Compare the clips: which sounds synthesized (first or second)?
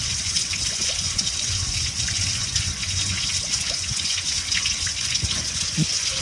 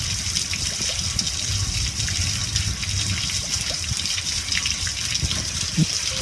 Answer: first